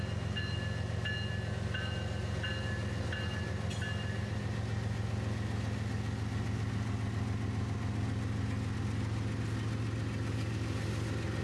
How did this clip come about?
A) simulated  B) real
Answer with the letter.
B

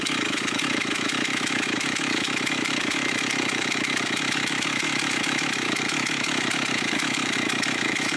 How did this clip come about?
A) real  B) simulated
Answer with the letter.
B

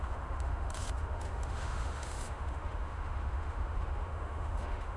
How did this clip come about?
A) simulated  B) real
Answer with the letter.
A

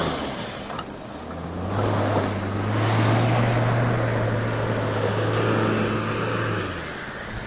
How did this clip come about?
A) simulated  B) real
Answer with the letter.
B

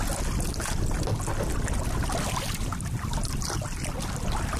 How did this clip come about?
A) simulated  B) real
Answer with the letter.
B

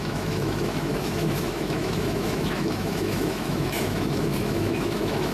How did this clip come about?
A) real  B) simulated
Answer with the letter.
B